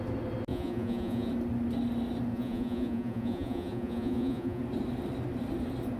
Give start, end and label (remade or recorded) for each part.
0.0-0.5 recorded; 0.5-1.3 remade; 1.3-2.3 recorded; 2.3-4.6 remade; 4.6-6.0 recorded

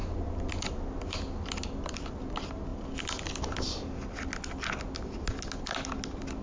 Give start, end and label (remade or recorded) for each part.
0.0-6.4 recorded

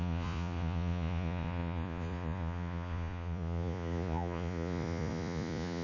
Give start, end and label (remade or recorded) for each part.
0.0-5.8 remade

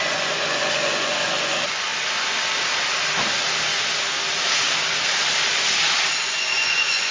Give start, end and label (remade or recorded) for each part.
0.0-1.9 remade; 1.9-6.2 recorded; 6.2-7.1 remade

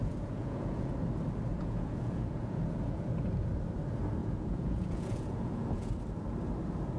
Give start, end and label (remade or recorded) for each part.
0.0-0.9 remade; 0.9-1.5 recorded; 1.5-3.6 remade; 3.6-4.2 recorded; 4.2-5.9 remade; 5.9-7.0 recorded